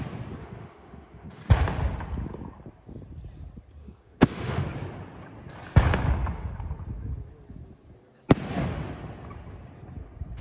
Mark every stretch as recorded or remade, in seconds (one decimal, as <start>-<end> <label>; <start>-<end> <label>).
0.0-0.4 recorded; 0.4-1.4 remade; 1.4-3.8 recorded; 3.8-4.6 remade; 4.6-10.4 recorded